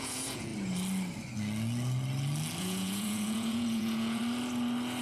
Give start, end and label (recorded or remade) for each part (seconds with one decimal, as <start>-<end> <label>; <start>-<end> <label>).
0.0-0.5 remade; 0.5-2.6 recorded; 2.6-4.2 remade; 4.2-5.0 recorded